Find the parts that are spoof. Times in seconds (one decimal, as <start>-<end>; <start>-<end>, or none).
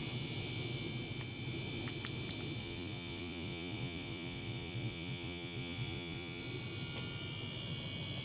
2.6-6.4